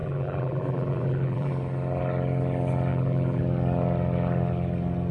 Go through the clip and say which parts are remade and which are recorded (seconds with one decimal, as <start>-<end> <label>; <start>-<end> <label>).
0.0-1.5 remade; 1.5-2.9 recorded; 2.9-3.4 remade; 3.4-5.1 recorded